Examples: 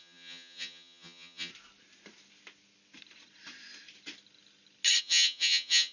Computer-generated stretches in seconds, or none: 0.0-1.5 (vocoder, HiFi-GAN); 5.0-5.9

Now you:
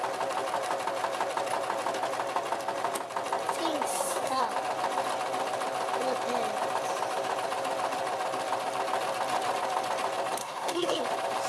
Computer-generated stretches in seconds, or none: 3.9-4.4 (codec, SNAC); 10.4-11.0

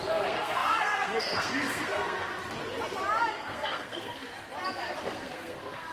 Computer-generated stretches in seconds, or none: 0.0-2.3 (codec, SNAC); 3.2-4.3; 5.0-5.9

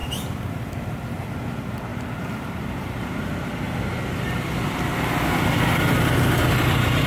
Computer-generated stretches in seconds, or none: 0.0-1.3 (vocoder, BigVGAN v2); 1.9-2.8